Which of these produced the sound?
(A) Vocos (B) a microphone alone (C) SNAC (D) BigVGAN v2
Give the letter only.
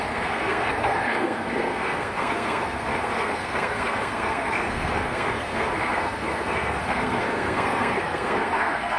C